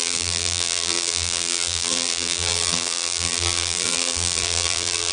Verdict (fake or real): fake